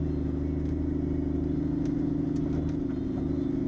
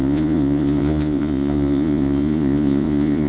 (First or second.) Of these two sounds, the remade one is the second